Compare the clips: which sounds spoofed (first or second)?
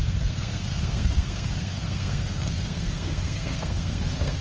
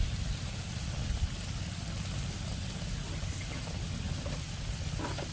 first